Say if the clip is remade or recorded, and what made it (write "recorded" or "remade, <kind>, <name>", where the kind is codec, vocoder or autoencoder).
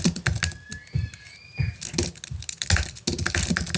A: recorded